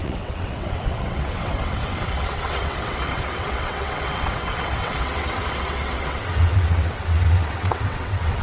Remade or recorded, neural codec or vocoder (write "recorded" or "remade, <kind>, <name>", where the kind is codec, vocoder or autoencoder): remade, vocoder, WaveNeXt